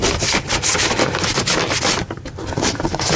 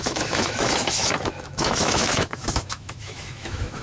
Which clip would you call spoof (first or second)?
second